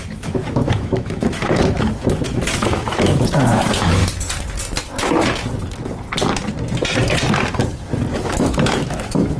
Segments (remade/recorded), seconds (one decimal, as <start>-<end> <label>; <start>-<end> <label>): 0.0-4.0 remade; 4.0-8.2 recorded; 8.2-9.4 remade